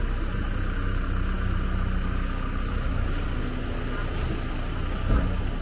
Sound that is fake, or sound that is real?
real